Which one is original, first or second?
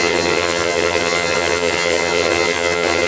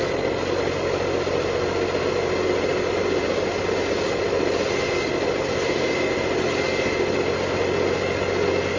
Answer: second